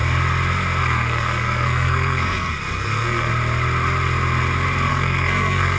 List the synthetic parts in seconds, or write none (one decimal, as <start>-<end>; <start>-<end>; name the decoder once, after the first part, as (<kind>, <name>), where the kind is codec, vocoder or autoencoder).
0.8-3.3 (codec, SNAC); 4.9-5.8

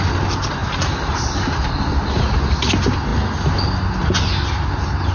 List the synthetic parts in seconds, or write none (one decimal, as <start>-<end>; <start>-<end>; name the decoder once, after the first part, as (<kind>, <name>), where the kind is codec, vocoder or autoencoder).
none

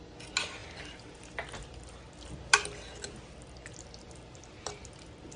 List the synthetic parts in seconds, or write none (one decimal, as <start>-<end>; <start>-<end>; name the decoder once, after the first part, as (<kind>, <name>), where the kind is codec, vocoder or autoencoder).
none

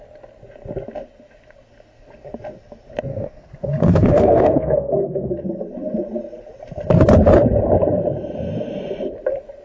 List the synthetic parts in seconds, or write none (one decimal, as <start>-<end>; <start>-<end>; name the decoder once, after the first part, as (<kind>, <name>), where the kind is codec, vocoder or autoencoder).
3.1-5.3 (codec, SNAC)

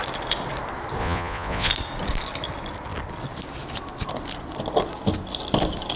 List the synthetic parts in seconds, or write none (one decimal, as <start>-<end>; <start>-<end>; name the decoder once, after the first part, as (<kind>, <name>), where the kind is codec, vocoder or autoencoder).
1.0-1.7 (vocoder, Vocos)

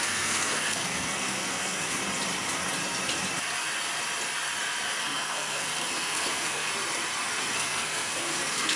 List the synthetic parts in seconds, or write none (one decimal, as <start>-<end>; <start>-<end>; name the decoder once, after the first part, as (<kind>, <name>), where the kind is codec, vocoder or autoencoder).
0.0-2.0 (codec, SNAC); 5.0-6.7; 7.4-8.8

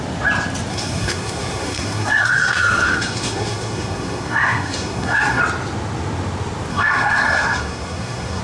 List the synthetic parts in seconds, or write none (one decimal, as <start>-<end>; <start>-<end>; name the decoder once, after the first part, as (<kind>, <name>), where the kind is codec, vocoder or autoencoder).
0.7-5.4 (codec, SNAC); 6.7-8.4